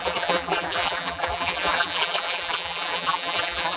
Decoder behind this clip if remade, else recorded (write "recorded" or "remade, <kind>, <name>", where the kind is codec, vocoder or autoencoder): remade, vocoder, BigVGAN v2